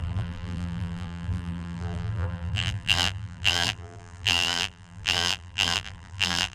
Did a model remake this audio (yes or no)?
yes